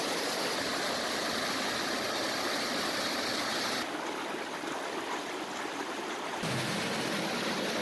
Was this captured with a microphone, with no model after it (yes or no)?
yes